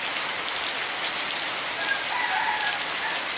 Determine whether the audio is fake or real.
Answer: real